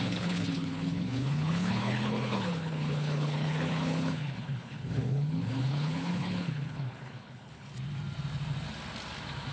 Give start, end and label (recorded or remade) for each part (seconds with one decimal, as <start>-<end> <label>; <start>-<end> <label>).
0.0-7.7 remade; 7.7-9.5 recorded